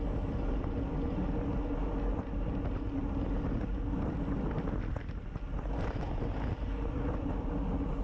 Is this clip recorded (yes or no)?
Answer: yes